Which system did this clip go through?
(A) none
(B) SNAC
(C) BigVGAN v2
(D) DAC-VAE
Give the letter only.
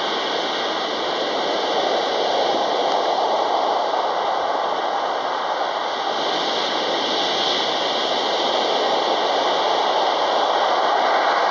A